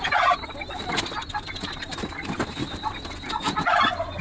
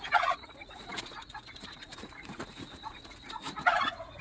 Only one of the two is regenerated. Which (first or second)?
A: second